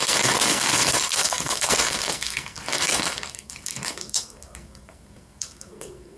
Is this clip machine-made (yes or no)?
yes